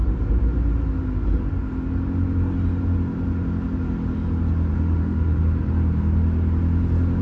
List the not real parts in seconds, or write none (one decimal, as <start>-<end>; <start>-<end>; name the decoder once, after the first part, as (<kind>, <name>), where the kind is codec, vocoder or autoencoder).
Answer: 4.7-5.4 (autoencoder, DAC-VAE)